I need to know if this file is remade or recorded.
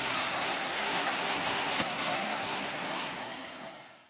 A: remade